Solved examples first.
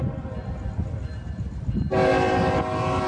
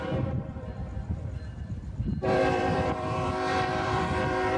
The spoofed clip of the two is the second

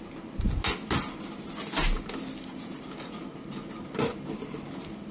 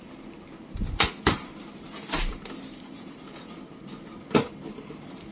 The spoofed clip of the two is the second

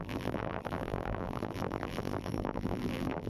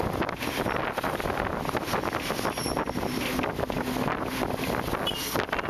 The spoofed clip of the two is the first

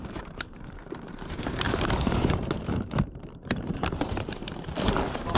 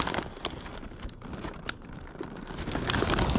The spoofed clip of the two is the first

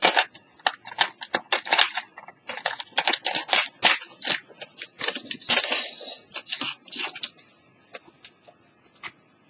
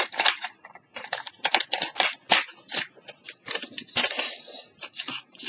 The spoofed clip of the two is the second